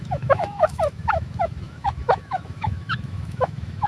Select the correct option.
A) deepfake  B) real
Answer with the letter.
A